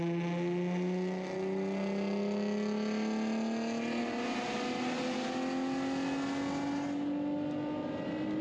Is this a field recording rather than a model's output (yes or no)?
yes